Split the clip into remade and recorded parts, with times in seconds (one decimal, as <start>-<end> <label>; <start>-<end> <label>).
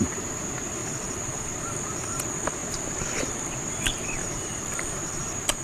0.0-0.8 recorded; 0.8-2.2 remade; 2.2-4.2 recorded; 4.2-5.6 remade